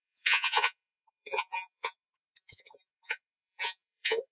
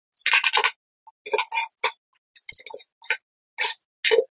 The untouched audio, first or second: second